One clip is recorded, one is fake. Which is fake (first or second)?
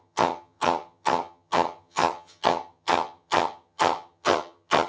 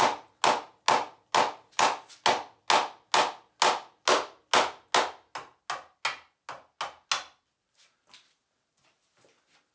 first